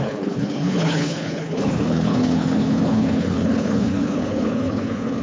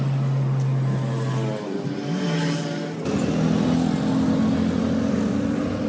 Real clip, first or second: second